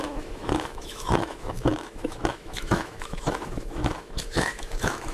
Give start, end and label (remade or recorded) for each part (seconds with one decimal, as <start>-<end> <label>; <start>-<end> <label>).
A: 0.0-5.1 remade